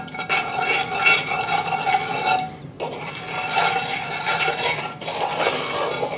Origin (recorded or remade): recorded